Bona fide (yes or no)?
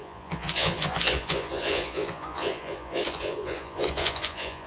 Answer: no